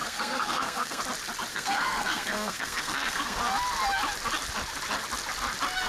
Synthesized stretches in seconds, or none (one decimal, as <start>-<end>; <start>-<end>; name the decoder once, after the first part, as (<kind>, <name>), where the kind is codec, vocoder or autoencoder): 0.0-1.0 (codec, SNAC); 1.5-3.4